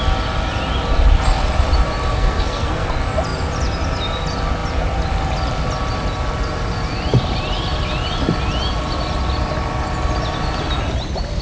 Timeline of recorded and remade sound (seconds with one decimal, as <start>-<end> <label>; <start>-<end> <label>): 0.0-2.1 recorded; 2.1-2.9 remade; 2.9-11.4 recorded